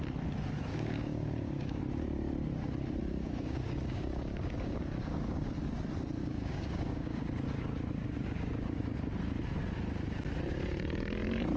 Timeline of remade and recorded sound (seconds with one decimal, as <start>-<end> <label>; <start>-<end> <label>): 0.0-0.7 recorded; 0.7-1.8 remade; 1.8-3.0 recorded; 3.0-5.5 remade; 5.5-6.2 recorded; 6.2-7.2 remade; 7.2-8.0 recorded; 8.0-8.8 remade; 8.8-11.6 recorded

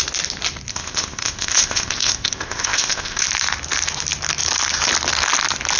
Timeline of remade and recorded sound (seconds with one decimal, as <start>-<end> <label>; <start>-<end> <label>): 0.0-0.7 recorded; 0.7-3.2 remade; 3.2-5.8 recorded

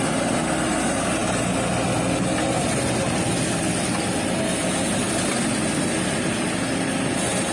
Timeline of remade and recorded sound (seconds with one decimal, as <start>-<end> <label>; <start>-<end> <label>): 0.0-7.5 recorded

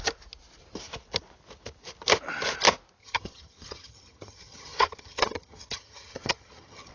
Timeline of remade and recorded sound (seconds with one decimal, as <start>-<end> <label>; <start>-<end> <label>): 0.0-3.0 recorded; 3.0-6.9 remade

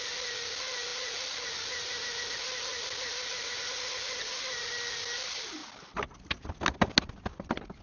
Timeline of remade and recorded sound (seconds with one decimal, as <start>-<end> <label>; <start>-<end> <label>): 0.0-7.8 recorded

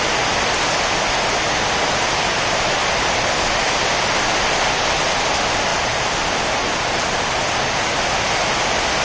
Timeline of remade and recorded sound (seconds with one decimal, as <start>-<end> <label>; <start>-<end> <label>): 0.0-9.0 recorded

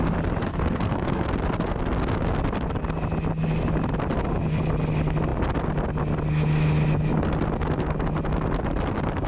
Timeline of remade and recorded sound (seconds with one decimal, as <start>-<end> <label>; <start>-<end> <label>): 0.0-0.5 recorded; 0.5-1.2 remade; 1.2-9.3 recorded

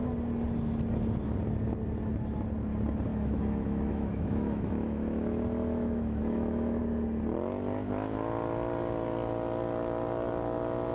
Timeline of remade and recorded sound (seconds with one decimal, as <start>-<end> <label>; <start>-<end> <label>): 0.0-3.1 recorded; 3.1-6.8 remade; 6.8-10.9 recorded